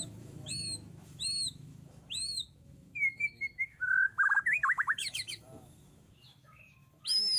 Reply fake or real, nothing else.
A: fake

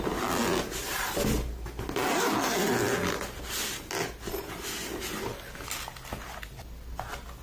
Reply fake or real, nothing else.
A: real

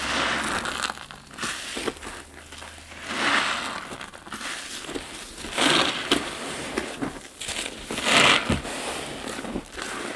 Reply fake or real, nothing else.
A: real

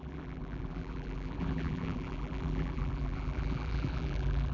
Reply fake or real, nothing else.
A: fake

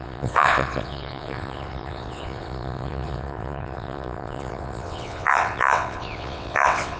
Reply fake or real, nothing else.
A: fake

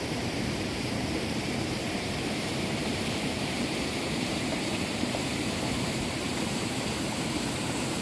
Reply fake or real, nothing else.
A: fake